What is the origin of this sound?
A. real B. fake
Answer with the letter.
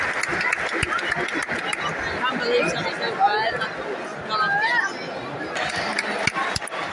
A